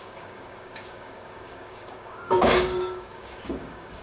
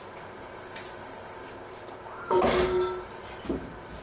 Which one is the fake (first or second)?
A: first